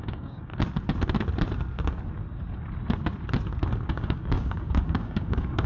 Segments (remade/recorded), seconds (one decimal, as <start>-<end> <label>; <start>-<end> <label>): 0.0-0.5 remade; 0.5-3.9 recorded; 3.9-5.7 remade